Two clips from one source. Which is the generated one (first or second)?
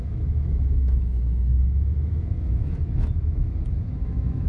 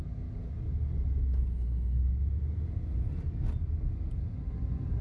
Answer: first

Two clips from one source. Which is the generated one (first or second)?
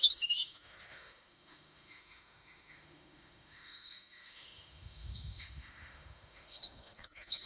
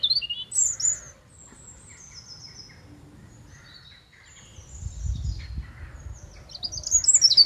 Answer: first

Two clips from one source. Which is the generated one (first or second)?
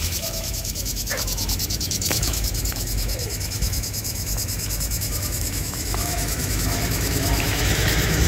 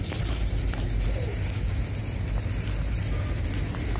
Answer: first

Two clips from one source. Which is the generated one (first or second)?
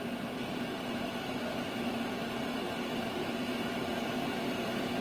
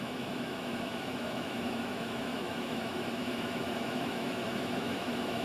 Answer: second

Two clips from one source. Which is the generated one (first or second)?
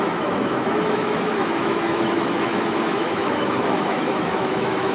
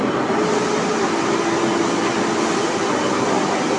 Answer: first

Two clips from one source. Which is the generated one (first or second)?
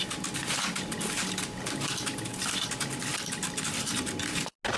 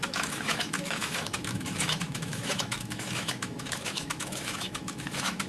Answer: second